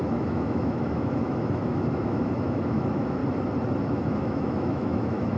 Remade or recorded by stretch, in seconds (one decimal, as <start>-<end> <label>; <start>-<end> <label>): 0.0-3.2 remade; 3.2-3.8 recorded; 3.8-5.4 remade